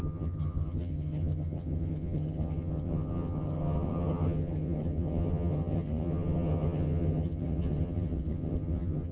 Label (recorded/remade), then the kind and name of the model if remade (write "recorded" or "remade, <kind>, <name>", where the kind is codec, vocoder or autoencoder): remade, vocoder, HiFi-GAN